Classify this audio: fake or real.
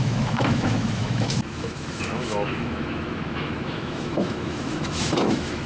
fake